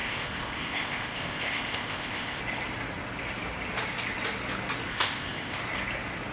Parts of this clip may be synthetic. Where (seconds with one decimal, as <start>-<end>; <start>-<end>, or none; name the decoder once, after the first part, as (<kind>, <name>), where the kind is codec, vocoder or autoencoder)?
0.0-2.4 (codec, ZipCodec); 4.9-5.6